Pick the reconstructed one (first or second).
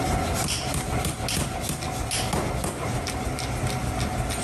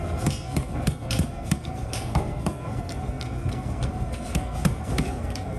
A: second